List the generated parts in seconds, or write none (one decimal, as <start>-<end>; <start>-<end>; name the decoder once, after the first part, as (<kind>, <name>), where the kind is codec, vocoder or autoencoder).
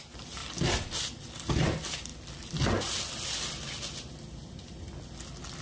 none